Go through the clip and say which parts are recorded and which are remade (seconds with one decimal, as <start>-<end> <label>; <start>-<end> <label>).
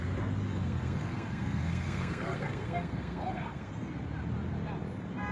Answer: 0.0-0.5 recorded; 0.5-3.7 remade; 3.7-5.3 recorded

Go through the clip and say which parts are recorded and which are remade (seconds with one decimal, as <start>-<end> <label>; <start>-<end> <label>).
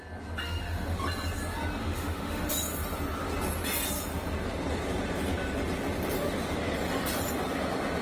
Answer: 0.0-0.4 recorded; 0.4-1.0 remade; 1.0-1.8 recorded; 1.8-2.5 remade; 2.5-8.0 recorded